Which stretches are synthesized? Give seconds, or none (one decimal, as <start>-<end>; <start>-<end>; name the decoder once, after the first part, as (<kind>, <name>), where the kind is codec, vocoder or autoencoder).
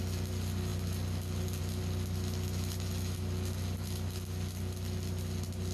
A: none